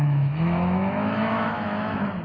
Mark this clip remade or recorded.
remade